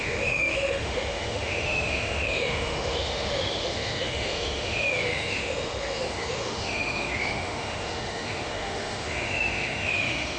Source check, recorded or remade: remade